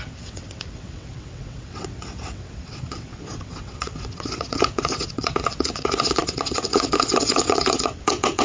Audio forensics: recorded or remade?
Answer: remade